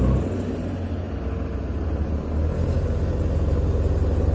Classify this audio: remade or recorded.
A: recorded